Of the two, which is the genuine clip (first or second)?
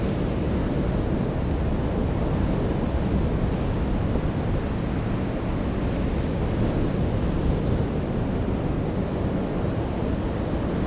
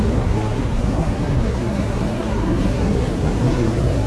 first